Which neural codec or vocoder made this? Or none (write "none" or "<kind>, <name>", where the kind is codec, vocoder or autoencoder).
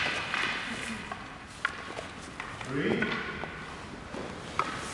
none